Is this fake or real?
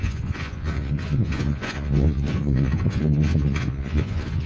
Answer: fake